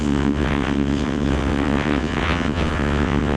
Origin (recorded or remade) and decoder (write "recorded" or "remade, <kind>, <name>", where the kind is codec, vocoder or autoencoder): remade, vocoder, WaveNeXt